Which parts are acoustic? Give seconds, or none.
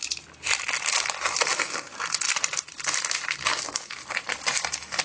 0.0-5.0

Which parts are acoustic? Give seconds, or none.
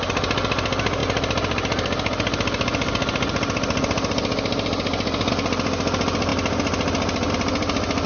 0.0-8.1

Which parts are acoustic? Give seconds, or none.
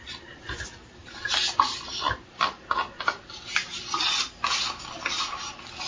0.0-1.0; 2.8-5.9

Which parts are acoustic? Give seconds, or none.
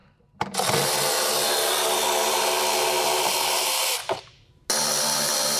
0.0-5.6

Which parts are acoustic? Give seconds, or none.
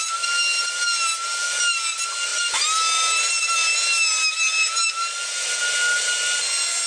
0.0-6.9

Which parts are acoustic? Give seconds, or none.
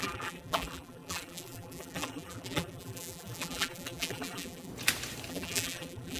4.7-5.3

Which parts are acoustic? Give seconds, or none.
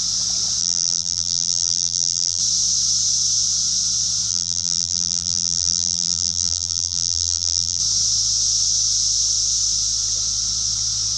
0.0-0.6; 2.4-4.3; 7.8-11.2